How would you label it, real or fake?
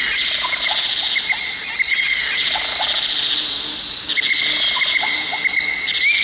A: real